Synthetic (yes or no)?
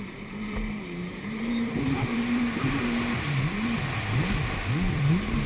yes